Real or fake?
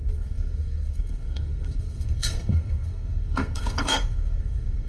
fake